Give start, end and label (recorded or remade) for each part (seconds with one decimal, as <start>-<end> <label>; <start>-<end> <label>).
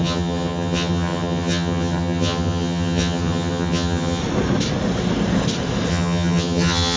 0.0-4.2 remade; 4.2-5.9 recorded; 5.9-7.0 remade